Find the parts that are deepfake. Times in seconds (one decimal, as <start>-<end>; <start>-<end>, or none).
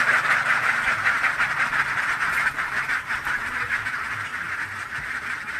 none